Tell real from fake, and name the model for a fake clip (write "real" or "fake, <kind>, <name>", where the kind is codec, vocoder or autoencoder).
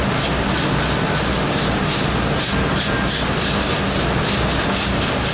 real